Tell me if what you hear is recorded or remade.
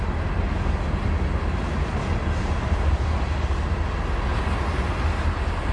recorded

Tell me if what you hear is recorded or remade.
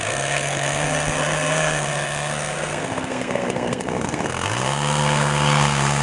remade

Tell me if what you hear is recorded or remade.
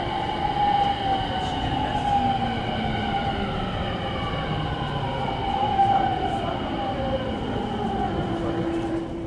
recorded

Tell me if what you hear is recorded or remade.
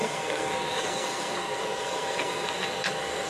remade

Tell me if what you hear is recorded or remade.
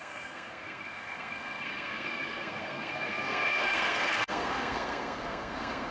remade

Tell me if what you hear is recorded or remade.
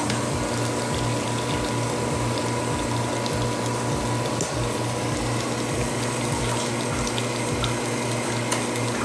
recorded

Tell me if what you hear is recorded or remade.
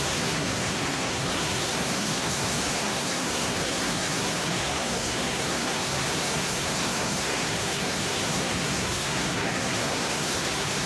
remade